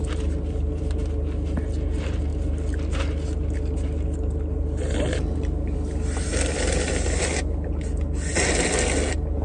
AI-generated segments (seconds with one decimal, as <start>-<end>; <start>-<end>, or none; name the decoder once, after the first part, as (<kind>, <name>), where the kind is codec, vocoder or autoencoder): none